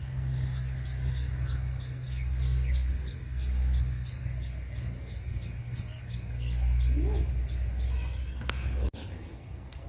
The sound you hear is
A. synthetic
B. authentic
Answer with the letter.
A